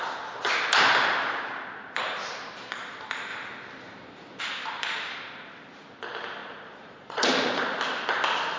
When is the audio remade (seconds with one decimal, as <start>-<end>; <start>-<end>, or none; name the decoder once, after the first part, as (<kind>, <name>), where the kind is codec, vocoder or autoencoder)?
6.4-7.6 (vocoder, Vocos)